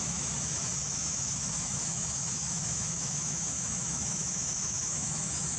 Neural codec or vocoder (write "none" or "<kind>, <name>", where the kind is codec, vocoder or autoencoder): autoencoder, DAC-VAE